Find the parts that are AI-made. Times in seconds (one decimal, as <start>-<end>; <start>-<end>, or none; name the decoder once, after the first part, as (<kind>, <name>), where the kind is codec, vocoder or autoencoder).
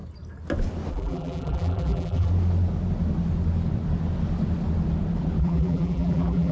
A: 0.9-2.3 (vocoder, BigVGAN v2); 5.4-6.5